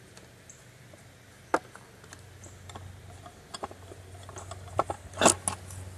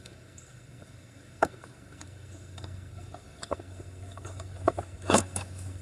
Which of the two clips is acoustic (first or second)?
first